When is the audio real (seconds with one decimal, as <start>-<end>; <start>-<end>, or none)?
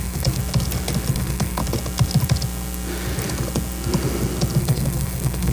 0.4-1.1; 1.6-4.6